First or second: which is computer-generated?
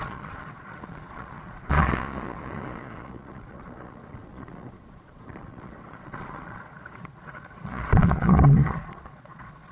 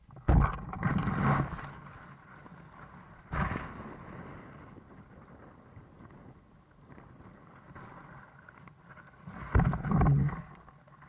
first